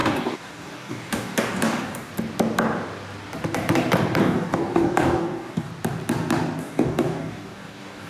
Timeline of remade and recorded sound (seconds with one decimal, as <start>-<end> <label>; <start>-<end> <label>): 0.0-2.1 remade; 2.1-4.2 recorded; 4.2-5.7 remade; 5.7-6.6 recorded; 6.6-8.1 remade